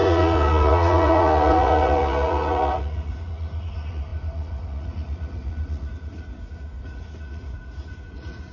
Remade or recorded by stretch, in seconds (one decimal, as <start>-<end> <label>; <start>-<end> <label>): 0.0-8.5 remade